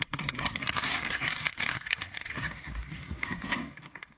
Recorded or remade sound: remade